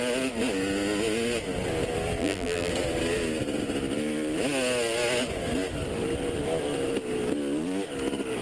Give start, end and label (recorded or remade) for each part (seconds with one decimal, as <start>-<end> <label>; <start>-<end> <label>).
0.0-2.2 recorded; 2.2-2.7 remade; 2.7-8.4 recorded